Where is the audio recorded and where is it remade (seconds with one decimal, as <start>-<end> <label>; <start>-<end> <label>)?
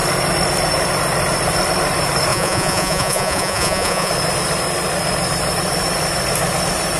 0.0-2.3 recorded; 2.3-4.1 remade; 4.1-7.0 recorded